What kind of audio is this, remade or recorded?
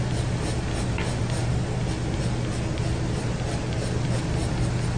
recorded